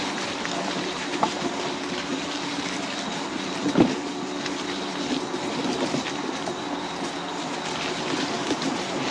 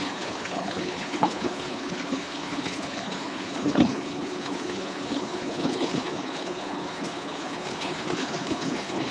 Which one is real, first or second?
first